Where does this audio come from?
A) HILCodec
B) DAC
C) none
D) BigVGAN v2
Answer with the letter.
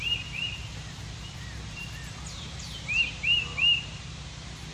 D